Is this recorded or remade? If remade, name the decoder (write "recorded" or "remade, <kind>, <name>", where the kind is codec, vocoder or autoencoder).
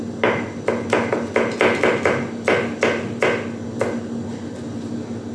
recorded